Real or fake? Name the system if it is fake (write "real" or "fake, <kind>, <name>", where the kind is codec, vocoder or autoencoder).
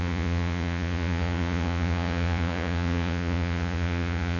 fake, vocoder, Vocos